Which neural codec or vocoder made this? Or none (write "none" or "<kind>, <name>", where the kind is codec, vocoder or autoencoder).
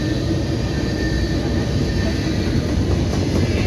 none